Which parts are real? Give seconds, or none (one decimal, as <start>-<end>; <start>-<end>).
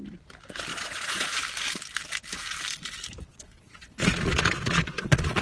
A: 0.0-0.7; 1.4-3.3